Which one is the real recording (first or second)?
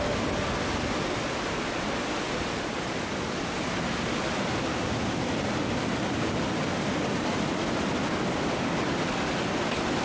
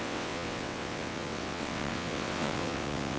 first